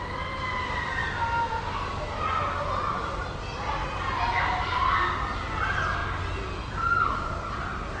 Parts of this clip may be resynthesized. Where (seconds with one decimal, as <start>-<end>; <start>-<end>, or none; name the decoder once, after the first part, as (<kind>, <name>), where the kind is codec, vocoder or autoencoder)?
none